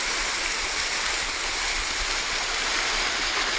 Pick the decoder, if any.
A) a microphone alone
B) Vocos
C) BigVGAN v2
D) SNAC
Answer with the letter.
A